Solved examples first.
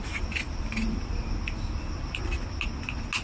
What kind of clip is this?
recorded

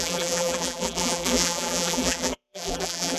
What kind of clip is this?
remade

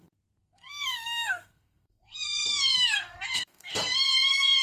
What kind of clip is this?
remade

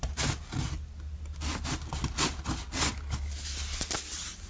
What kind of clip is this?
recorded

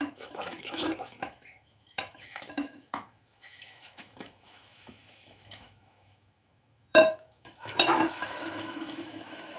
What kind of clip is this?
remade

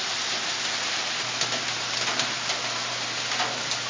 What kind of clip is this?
recorded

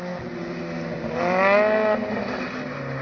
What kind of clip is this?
recorded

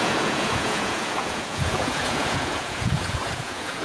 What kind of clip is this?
remade